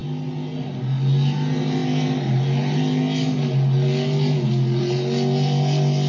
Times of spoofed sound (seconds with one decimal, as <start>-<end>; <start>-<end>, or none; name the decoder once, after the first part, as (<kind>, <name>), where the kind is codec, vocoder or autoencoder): none